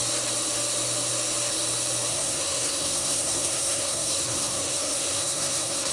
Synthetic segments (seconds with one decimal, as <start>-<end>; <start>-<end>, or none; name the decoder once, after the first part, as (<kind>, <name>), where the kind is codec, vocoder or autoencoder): 2.1-5.9 (codec, SNAC)